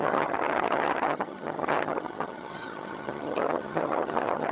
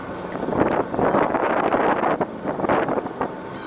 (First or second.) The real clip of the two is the second